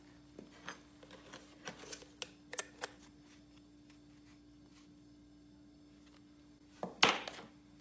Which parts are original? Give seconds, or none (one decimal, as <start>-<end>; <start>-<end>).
0.0-7.8